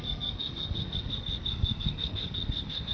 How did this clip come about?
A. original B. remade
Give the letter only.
B